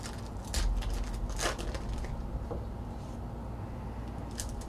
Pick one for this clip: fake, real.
real